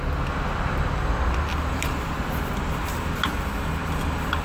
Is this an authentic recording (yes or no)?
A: yes